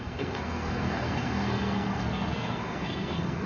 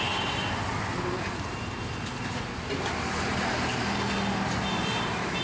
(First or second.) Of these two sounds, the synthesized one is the first